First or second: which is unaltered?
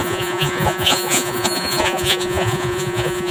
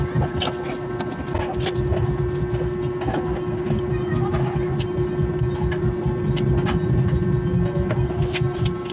second